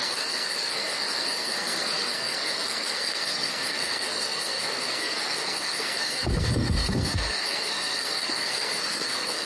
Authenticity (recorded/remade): remade